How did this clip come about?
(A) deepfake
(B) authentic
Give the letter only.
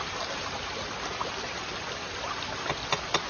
B